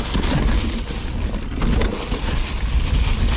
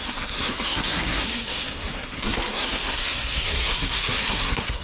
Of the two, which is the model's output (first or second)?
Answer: second